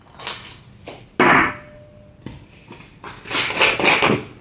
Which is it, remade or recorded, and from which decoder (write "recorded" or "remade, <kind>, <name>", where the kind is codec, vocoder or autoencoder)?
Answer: recorded